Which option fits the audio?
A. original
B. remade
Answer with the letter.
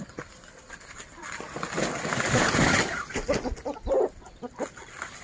A